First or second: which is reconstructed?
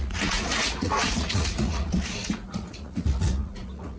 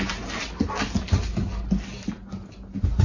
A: first